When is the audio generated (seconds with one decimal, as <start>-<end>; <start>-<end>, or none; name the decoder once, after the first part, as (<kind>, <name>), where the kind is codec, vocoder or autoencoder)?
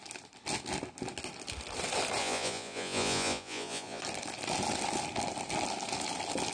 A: 2.2-4.0 (vocoder, Vocos)